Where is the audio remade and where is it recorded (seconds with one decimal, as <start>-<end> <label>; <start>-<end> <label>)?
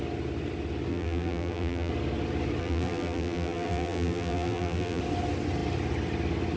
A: 0.0-0.9 recorded; 0.9-1.9 remade; 1.9-2.6 recorded; 2.6-5.0 remade; 5.0-6.6 recorded